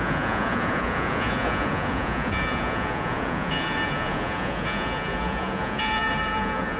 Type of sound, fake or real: fake